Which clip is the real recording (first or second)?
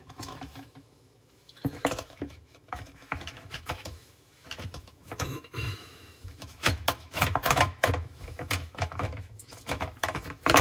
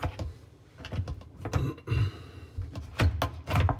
second